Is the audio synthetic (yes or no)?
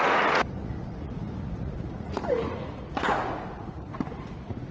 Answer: yes